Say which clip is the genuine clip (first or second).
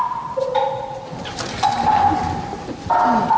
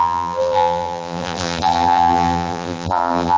first